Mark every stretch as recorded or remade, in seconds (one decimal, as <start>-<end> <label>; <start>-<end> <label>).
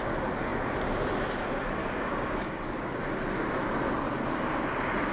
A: 0.0-1.8 recorded; 1.8-3.0 remade; 3.0-5.1 recorded